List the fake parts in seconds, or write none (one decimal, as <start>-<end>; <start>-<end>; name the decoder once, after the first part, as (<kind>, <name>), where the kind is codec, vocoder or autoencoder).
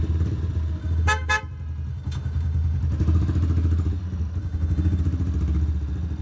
0.8-1.4 (codec, DAC); 1.9-2.8; 4.4-5.0